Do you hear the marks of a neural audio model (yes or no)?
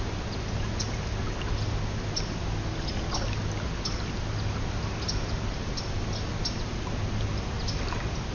no